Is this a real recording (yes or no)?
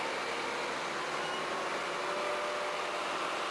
yes